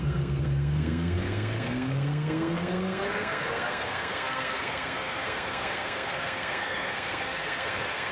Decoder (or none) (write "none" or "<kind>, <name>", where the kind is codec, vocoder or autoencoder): codec, SNAC